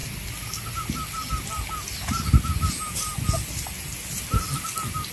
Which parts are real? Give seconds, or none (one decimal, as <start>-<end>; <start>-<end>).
0.0-5.1